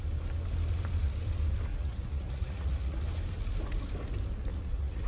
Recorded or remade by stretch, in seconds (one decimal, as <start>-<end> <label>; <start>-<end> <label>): 0.0-1.7 recorded; 1.7-3.0 remade; 3.0-4.5 recorded; 4.5-5.1 remade